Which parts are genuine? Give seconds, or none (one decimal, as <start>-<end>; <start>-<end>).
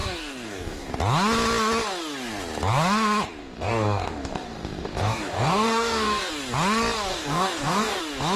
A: 0.9-3.4; 6.3-7.1; 8.0-8.4